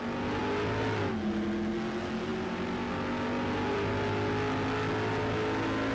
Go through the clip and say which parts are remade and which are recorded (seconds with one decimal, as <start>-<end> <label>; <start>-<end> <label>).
0.0-5.9 recorded